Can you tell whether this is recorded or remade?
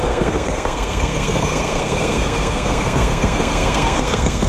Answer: remade